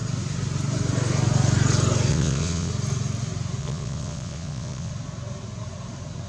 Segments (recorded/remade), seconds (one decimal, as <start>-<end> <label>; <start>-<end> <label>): 0.0-2.1 recorded; 2.1-2.7 remade; 2.7-3.6 recorded; 3.6-4.9 remade; 4.9-6.3 recorded